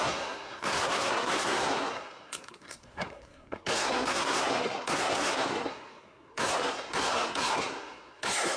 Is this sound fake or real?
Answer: fake